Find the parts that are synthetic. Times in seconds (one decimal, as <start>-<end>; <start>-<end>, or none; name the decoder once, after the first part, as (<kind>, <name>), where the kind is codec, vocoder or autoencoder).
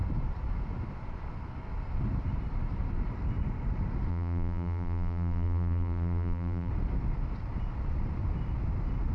4.1-6.7 (vocoder, BigVGAN v2)